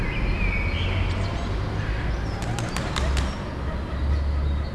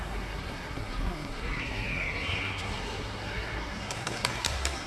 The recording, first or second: first